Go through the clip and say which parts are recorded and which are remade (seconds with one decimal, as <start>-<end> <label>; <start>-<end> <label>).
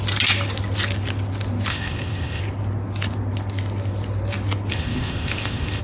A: 0.0-1.7 recorded; 1.7-2.4 remade; 2.4-4.7 recorded; 4.7-5.8 remade